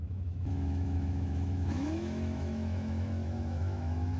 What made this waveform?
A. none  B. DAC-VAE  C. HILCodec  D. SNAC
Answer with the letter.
B